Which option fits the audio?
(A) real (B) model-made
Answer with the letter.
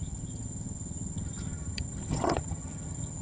B